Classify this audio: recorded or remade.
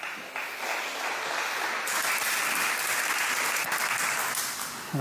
recorded